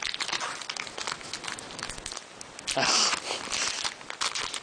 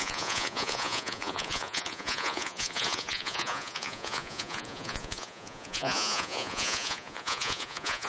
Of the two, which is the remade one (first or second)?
second